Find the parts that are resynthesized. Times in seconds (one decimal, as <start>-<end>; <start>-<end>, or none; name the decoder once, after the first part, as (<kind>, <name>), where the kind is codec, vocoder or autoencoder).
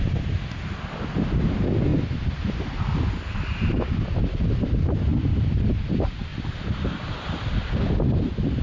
none